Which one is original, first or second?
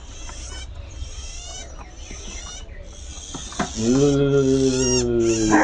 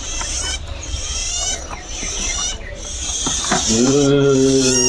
first